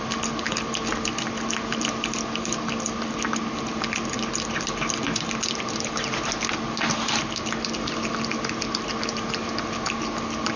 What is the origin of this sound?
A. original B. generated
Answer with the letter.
A